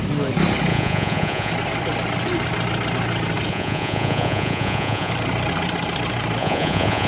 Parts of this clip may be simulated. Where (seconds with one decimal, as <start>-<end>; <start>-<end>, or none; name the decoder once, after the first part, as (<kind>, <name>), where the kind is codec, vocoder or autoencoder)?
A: 0.7-1.5 (vocoder, Vocos); 3.5-5.1; 6.4-7.1